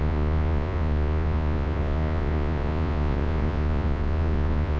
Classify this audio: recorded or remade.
remade